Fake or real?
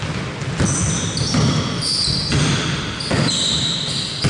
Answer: real